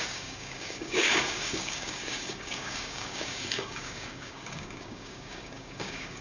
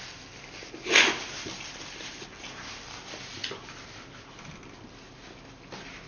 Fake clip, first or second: first